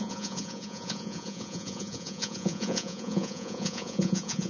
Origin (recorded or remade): remade